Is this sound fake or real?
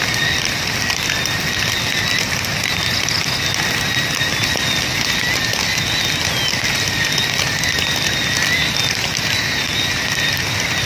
real